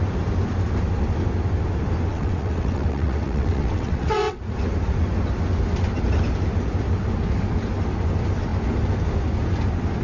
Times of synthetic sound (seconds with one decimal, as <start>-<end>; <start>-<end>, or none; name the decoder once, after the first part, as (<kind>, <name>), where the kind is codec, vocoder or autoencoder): 2.1-4.4 (vocoder, WaveNeXt)